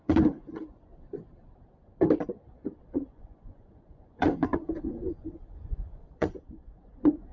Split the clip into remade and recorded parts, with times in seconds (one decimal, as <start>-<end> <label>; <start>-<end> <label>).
0.0-0.9 remade; 0.9-2.9 recorded; 2.9-7.3 remade